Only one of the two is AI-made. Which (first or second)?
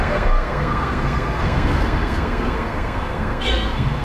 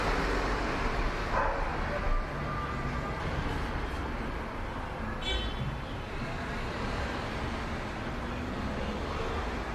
first